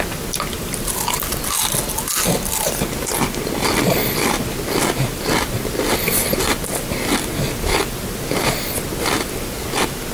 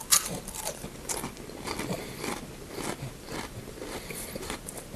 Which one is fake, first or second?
second